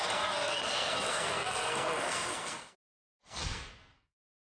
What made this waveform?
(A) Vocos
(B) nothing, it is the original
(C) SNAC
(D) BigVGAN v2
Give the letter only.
C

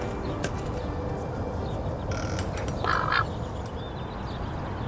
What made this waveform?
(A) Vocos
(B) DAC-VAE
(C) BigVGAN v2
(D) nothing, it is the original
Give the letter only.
D